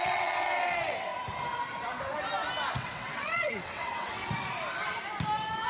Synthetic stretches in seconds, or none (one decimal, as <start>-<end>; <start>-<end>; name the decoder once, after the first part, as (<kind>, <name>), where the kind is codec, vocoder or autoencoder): 0.0-1.1 (vocoder, WaveNeXt); 2.7-4.2